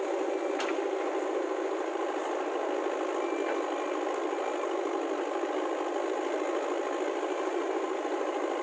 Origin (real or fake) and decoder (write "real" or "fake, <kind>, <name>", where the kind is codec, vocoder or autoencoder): real